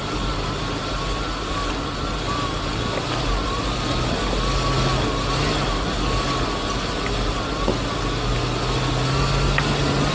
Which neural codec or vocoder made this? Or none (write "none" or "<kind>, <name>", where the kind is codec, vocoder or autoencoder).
none